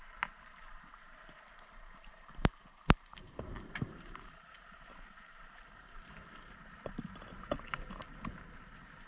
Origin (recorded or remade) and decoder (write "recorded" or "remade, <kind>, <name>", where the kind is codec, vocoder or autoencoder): remade, vocoder, BigVGAN v2